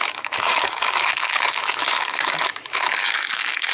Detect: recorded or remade remade